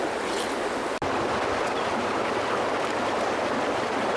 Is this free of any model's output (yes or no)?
yes